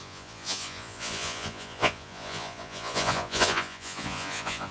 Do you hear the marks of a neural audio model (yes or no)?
yes